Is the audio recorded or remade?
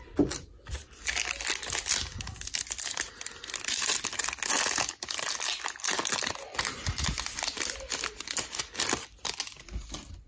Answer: recorded